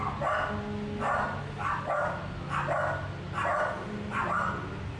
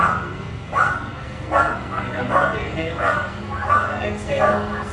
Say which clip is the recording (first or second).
first